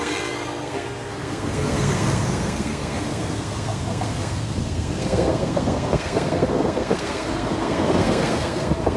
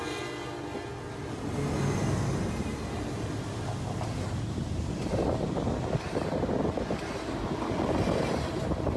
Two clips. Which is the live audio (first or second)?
second